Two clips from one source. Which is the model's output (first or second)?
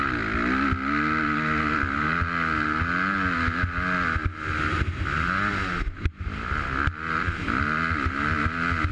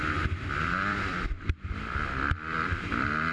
second